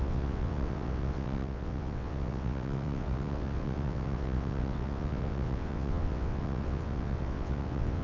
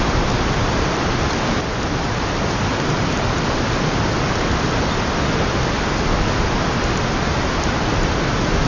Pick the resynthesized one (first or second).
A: first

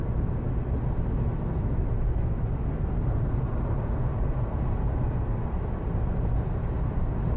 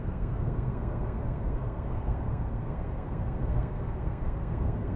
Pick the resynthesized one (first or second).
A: second